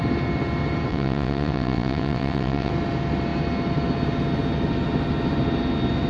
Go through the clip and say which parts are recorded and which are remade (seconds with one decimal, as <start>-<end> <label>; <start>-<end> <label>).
0.0-0.9 recorded; 0.9-2.7 remade; 2.7-6.1 recorded